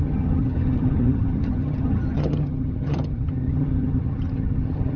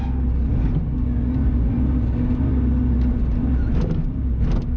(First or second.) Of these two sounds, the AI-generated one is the first